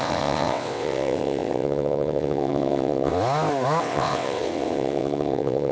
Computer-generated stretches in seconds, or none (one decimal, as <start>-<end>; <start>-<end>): 0.0-3.1; 3.8-5.7